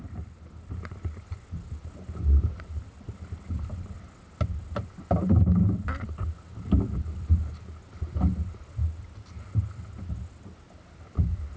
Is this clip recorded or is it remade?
recorded